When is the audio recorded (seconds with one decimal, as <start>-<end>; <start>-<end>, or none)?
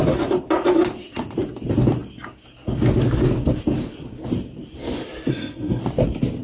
0.0-5.3; 5.8-6.4